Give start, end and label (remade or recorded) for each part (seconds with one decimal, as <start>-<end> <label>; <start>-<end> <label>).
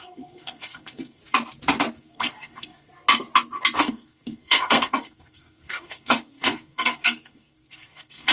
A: 0.0-1.2 remade; 1.2-2.0 recorded; 2.0-2.9 remade; 2.9-3.8 recorded; 3.8-8.3 remade